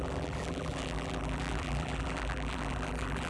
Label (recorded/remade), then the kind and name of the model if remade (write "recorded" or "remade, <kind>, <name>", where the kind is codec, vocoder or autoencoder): remade, vocoder, BigVGAN v2